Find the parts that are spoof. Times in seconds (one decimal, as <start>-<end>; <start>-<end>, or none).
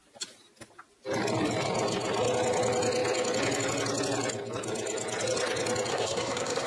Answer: 5.9-6.7